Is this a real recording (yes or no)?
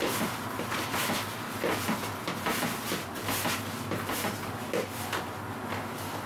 yes